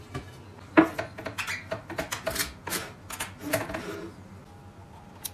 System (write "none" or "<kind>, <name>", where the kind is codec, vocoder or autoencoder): none